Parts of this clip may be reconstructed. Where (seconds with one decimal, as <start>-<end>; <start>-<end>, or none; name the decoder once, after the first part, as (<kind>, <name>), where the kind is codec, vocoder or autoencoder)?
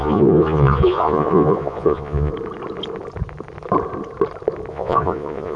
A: 0.0-2.3 (vocoder, Vocos); 4.7-5.6